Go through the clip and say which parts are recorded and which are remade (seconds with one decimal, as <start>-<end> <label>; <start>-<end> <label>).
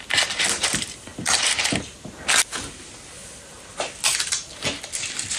0.0-5.4 recorded